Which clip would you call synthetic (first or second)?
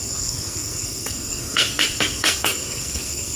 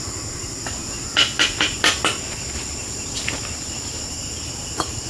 first